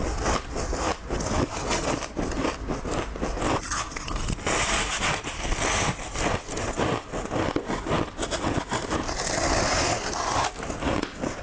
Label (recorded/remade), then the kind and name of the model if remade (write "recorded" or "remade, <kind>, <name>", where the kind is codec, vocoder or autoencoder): recorded